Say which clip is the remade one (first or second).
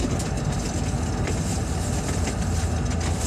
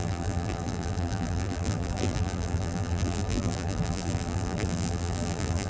second